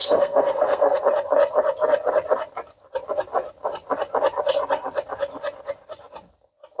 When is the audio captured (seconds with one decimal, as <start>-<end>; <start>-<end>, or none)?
1.0-6.8